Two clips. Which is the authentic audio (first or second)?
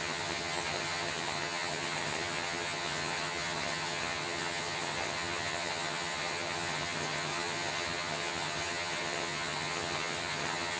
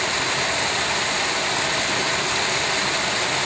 second